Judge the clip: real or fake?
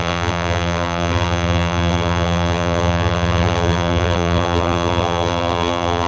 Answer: fake